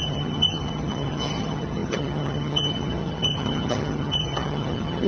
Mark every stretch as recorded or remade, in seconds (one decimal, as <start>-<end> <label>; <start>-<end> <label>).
0.0-5.1 remade